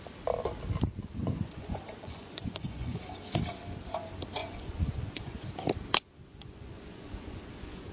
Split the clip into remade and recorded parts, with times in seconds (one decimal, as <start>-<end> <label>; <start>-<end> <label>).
0.0-1.2 recorded; 1.2-3.0 remade; 3.0-4.4 recorded; 4.4-5.5 remade; 5.5-6.3 recorded; 6.3-7.9 remade